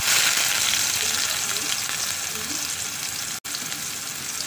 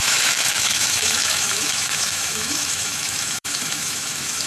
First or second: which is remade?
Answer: second